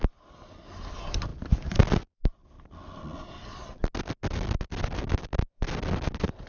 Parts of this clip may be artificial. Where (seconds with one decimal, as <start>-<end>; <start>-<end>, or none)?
none